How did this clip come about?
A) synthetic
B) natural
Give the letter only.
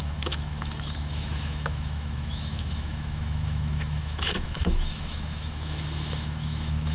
A